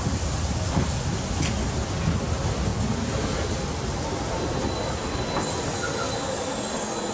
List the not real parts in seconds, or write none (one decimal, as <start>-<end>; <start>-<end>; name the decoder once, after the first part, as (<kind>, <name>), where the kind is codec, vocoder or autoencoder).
none

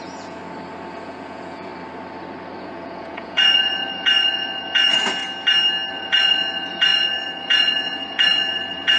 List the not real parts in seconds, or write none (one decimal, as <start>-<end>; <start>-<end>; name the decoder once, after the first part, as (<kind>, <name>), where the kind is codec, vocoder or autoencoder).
0.0-0.4 (vocoder, Vocos); 0.9-1.7; 2.6-5.2; 5.9-9.0

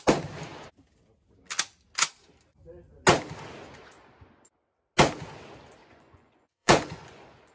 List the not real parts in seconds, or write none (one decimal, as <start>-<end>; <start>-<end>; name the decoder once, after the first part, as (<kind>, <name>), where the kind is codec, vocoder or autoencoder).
5.8-7.5 (vocoder, Vocos)